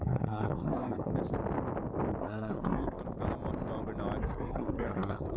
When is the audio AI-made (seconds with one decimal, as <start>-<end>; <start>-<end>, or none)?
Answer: 0.0-1.1; 2.2-3.0; 4.2-5.4